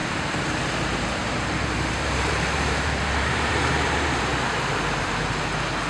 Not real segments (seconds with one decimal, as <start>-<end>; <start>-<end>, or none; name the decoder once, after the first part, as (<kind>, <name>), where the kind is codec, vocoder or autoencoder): 0.0-4.3 (vocoder, BigVGAN v2)